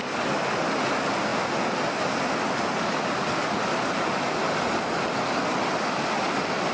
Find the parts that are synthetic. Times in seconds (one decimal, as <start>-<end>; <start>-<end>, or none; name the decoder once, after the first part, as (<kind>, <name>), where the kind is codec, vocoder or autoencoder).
none